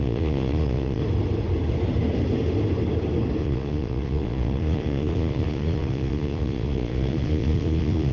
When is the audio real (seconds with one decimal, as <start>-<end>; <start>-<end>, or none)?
1.0-3.4